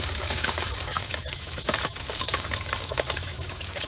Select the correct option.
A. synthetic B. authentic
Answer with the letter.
A